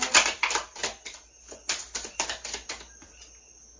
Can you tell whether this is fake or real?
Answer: real